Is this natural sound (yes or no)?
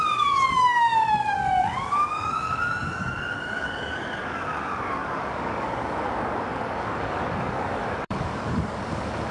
no